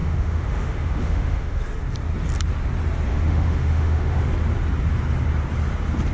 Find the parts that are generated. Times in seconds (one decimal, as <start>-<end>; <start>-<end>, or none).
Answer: 0.0-1.6; 3.1-4.2